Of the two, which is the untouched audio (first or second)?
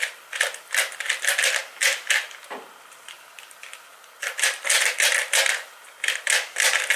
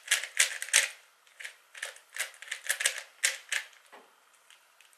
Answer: second